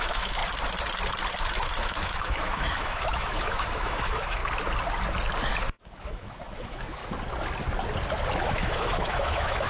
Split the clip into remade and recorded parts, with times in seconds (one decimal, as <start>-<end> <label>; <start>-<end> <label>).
0.0-0.4 remade; 0.4-1.5 recorded; 1.5-4.4 remade; 4.4-5.6 recorded; 5.6-7.0 remade; 7.0-8.4 recorded; 8.4-9.7 remade